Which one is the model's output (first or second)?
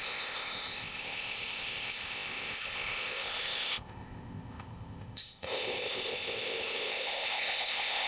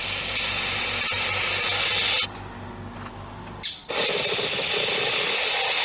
first